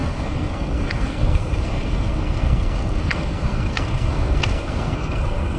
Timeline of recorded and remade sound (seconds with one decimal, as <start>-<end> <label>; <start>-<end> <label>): 0.0-5.6 remade